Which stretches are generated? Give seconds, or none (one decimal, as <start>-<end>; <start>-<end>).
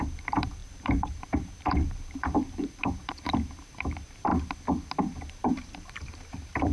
0.0-4.3; 5.0-6.7